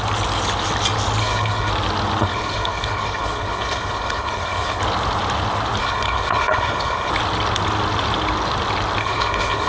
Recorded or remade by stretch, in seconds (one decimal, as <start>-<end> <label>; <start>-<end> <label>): 0.0-1.2 recorded; 1.2-1.7 remade; 1.7-2.2 recorded; 2.2-4.8 remade; 4.8-5.8 recorded; 5.8-7.1 remade; 7.1-9.0 recorded; 9.0-9.7 remade